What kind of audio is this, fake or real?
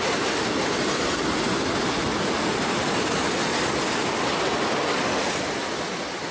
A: real